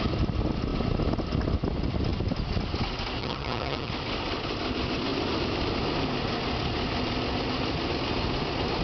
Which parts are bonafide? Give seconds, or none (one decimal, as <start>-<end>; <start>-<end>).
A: 0.0-3.2; 3.9-8.8